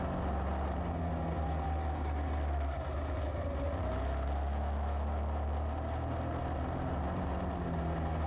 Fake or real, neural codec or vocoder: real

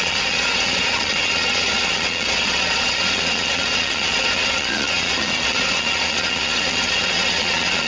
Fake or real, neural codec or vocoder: fake, vocoder, Vocos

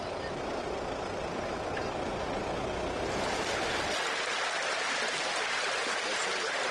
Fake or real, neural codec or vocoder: real